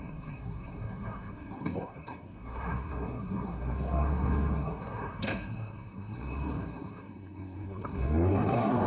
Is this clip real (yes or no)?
no